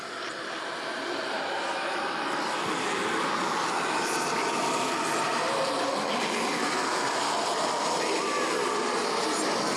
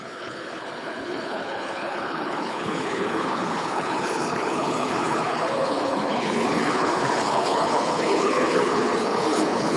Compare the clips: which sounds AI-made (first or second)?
second